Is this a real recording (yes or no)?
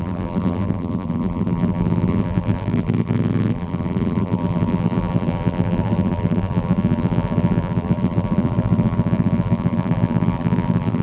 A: no